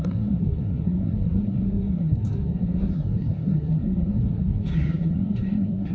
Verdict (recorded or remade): remade